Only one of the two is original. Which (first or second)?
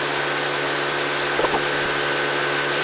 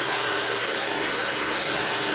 first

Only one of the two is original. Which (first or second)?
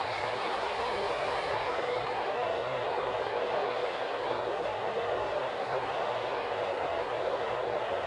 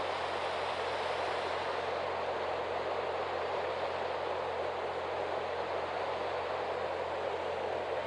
second